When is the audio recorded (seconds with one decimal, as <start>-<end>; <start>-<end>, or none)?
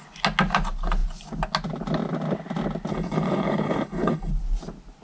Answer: 0.0-2.9; 4.3-5.0